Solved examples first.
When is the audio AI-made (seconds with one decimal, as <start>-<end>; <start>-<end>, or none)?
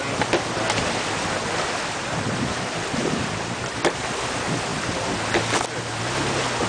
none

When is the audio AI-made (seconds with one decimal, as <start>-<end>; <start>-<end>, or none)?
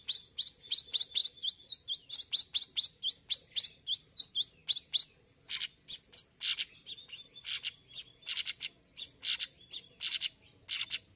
none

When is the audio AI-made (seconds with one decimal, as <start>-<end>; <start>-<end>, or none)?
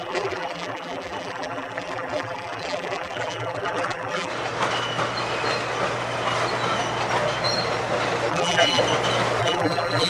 0.0-4.3; 8.3-8.8; 9.4-10.1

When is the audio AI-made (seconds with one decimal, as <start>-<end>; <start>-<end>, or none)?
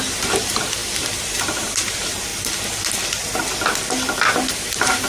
0.0-2.3; 4.5-5.1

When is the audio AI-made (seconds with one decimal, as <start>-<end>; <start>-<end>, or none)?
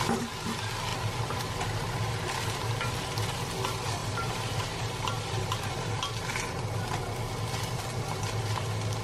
0.9-2.2; 4.0-5.7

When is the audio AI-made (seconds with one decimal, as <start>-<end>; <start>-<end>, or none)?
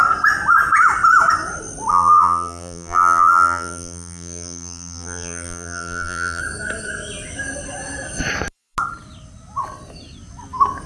1.9-6.4